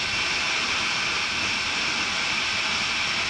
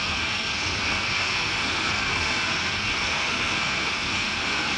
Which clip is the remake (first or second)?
second